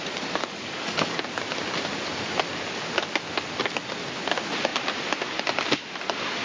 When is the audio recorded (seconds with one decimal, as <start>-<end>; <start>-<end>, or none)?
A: 0.0-0.4; 1.2-6.4

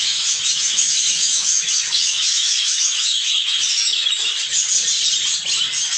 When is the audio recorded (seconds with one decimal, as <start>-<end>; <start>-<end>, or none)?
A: 4.3-6.0

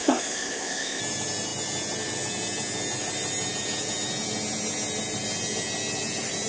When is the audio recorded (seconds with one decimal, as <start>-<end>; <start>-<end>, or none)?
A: 1.0-6.5

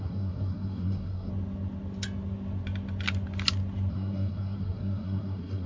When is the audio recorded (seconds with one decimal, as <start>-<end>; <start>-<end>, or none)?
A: 1.3-3.9